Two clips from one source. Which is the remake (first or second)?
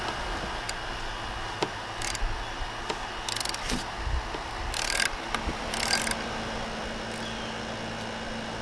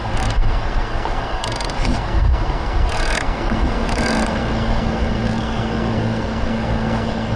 second